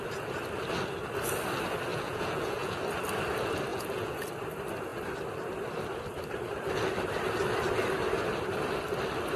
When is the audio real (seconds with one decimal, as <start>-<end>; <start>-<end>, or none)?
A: 0.0-1.9; 2.8-3.7; 4.3-9.4